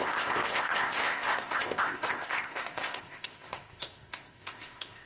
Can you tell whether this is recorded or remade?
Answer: remade